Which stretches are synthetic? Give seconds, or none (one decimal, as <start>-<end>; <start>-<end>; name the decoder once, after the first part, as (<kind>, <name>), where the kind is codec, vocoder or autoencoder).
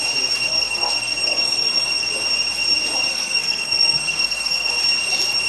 0.5-2.1 (codec, SNAC); 3.1-4.7